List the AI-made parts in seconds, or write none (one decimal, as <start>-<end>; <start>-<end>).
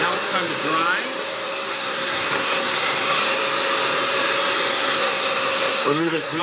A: 1.7-3.2; 4.7-6.4